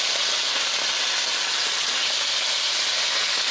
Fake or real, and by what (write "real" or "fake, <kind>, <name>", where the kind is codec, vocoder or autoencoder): real